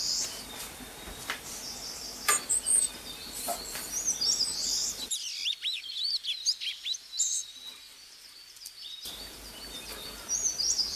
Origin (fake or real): fake